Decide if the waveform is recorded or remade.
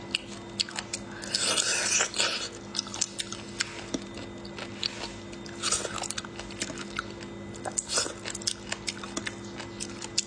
recorded